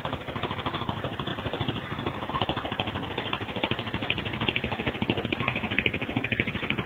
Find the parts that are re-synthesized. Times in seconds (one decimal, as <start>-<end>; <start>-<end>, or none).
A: 0.0-4.0